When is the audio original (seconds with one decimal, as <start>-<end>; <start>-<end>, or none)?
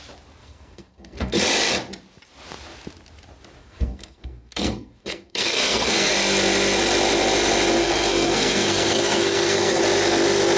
0.0-0.4; 1.4-3.6; 6.1-7.8; 9.8-10.6